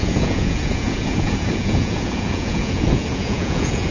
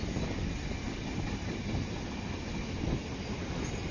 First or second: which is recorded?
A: second